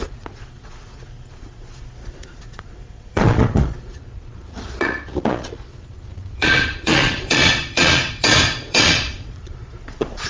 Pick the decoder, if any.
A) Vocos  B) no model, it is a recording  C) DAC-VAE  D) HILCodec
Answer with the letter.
A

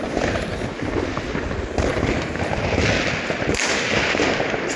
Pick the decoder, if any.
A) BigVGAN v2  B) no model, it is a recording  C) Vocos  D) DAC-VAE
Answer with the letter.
B